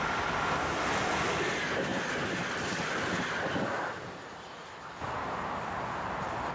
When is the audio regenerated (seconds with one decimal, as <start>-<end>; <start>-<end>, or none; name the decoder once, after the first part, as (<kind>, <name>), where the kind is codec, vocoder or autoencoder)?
none